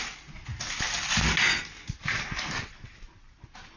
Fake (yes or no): no